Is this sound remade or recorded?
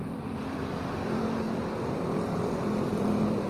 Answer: remade